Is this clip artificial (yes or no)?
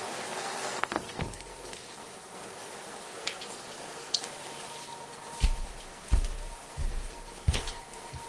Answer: yes